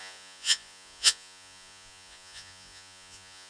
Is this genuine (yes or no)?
no